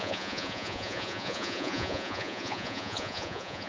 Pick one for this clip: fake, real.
fake